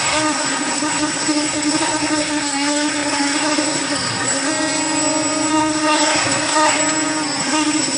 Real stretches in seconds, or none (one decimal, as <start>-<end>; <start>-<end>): 4.5-5.5; 6.8-7.4